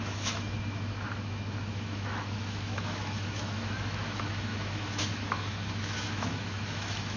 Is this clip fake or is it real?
fake